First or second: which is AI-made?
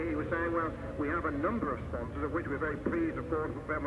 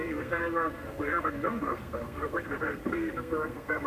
second